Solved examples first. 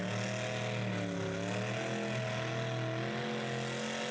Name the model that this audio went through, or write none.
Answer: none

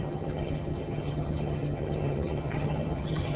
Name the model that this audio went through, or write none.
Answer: vocoder, HiFi-GAN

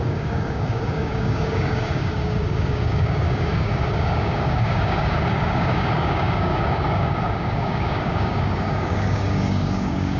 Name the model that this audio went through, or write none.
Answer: codec, DAC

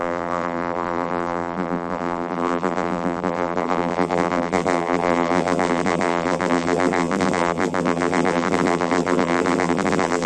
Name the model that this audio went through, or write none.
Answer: vocoder, BigVGAN v2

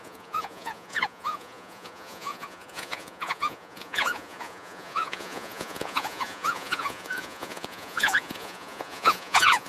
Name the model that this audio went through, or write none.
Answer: vocoder, Vocos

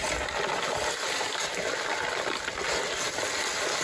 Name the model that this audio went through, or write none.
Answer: none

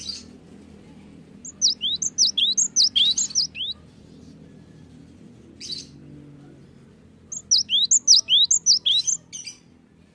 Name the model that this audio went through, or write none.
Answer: none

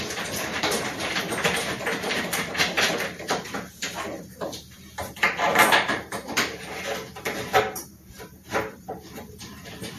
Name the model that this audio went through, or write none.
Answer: vocoder, BigVGAN v2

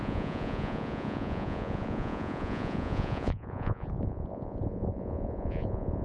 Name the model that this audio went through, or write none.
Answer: vocoder, Vocos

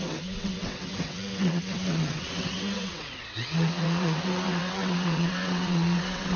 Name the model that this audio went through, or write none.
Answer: vocoder, WaveNeXt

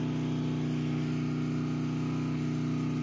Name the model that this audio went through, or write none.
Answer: none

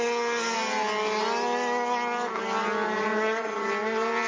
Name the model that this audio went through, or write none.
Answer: none